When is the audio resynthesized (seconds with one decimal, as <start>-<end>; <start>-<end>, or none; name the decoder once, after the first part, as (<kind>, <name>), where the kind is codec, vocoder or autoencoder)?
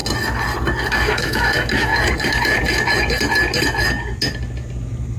0.9-1.9 (autoencoder, DAC-VAE)